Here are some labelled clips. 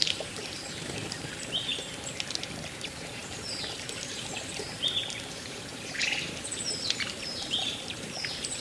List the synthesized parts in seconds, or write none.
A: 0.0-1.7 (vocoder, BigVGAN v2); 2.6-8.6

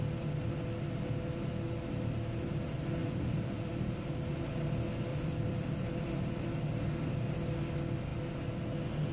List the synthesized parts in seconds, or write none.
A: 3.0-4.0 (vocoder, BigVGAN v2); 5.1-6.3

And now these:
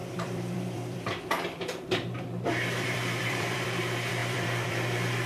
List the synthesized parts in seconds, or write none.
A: 0.0-5.3 (vocoder, BigVGAN v2)